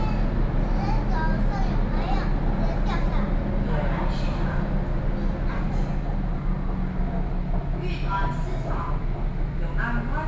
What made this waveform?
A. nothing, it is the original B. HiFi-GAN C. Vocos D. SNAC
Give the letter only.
A